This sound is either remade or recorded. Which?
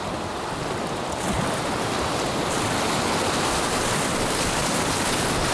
recorded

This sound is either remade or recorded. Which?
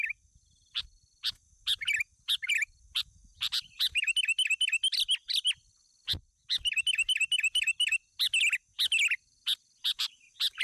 recorded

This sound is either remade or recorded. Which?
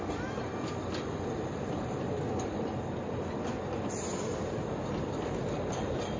recorded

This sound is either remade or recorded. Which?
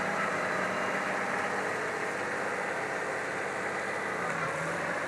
recorded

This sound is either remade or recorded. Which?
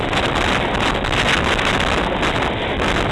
recorded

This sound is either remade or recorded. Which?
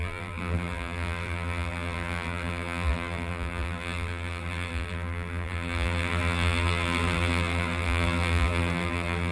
remade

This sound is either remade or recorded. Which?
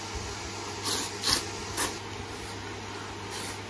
recorded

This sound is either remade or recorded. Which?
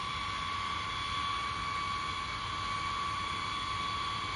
remade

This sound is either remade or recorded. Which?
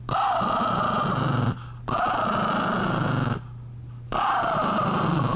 recorded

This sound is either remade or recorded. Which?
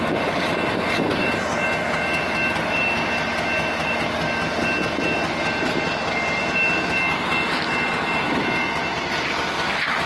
recorded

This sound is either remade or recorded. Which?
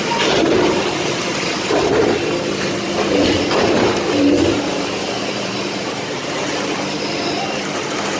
remade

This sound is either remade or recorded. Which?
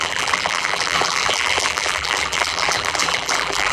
remade